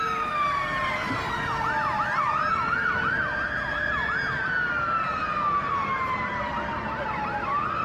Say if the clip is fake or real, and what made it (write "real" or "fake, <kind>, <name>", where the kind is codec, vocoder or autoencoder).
real